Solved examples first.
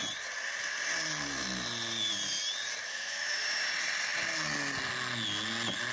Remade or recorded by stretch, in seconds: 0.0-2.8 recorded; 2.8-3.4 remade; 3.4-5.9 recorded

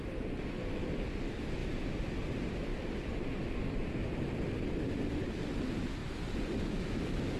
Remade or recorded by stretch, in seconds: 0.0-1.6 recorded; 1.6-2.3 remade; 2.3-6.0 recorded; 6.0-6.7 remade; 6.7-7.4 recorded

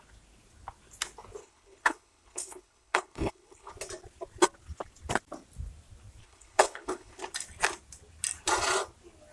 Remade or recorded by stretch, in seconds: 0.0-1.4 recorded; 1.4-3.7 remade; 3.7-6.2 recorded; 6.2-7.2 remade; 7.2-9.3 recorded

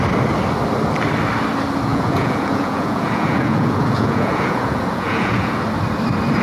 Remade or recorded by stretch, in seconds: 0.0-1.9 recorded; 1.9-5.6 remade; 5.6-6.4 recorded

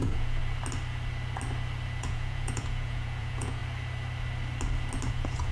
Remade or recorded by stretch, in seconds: 0.0-0.4 remade; 0.4-2.0 recorded; 2.0-3.6 remade; 3.6-5.1 recorded; 5.1-5.5 remade

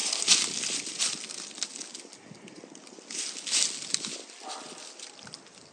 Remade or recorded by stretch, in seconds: 0.0-0.9 recorded; 0.9-1.9 remade; 1.9-3.9 recorded; 3.9-5.7 remade

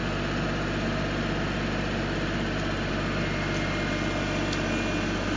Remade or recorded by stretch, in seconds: 0.0-5.4 recorded